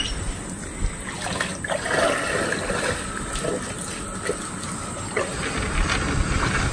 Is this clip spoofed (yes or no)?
no